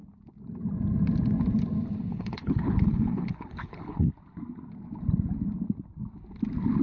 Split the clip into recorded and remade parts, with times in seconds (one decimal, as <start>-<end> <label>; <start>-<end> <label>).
0.0-2.1 recorded; 2.1-4.1 remade; 4.1-6.8 recorded